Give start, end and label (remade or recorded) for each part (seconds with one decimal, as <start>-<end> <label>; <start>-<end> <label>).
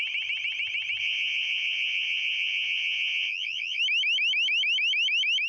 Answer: 0.0-1.0 recorded; 1.0-3.8 remade; 3.8-5.5 recorded